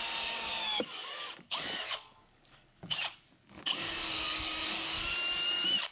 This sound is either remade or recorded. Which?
remade